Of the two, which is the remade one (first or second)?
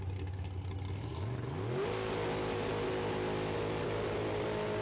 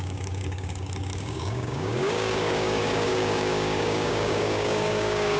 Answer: second